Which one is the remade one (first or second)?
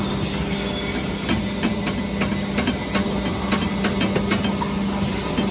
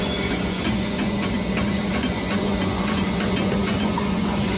second